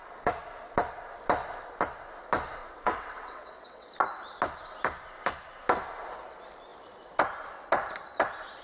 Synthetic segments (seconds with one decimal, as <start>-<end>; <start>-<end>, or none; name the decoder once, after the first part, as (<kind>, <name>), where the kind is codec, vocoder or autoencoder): 2.6-3.9 (vocoder, WaveNeXt)